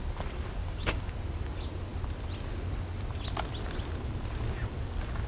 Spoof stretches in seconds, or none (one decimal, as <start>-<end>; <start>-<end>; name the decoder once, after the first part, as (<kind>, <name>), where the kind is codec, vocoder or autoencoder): 0.6-1.1 (codec, DAC)